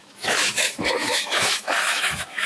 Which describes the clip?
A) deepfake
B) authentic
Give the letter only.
A